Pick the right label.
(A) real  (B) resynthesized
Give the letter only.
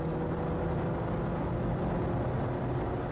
A